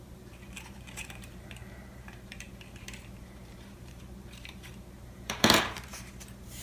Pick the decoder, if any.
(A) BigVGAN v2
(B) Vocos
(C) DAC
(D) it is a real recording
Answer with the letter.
A